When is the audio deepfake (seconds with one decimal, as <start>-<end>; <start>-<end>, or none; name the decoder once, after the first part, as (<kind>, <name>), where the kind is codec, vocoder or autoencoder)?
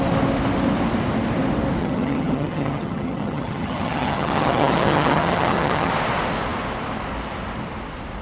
1.8-5.9 (vocoder, HiFi-GAN)